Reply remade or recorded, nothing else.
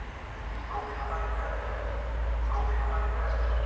recorded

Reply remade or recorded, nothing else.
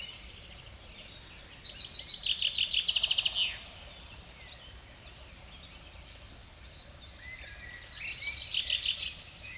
recorded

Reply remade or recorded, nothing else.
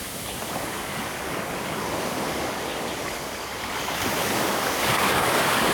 remade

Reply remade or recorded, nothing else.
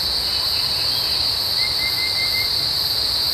recorded